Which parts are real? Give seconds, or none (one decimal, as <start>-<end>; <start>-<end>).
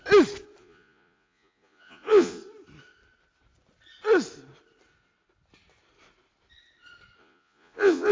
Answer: 0.0-0.6; 2.4-7.2